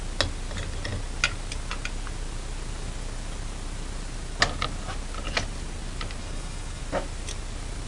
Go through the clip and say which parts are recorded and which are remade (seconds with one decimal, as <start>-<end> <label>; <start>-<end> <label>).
0.0-6.2 recorded; 6.2-6.8 remade; 6.8-7.9 recorded